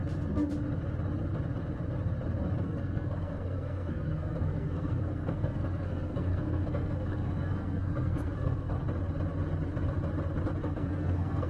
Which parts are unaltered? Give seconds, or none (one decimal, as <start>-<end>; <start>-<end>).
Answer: 0.0-2.6; 8.7-10.6